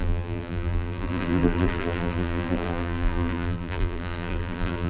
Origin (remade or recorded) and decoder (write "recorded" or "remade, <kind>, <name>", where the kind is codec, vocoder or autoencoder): remade, vocoder, BigVGAN v2